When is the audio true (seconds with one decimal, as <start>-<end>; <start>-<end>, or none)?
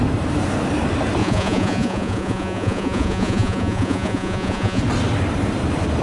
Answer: 0.0-1.2; 4.8-6.0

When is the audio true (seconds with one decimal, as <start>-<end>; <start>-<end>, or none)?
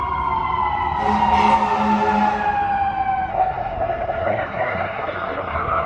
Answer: 0.0-3.3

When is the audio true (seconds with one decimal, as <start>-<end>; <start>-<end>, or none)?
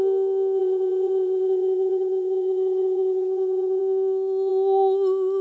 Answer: 0.0-0.6; 3.8-5.4